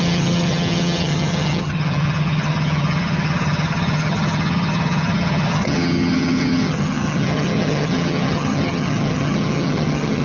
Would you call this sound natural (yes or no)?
no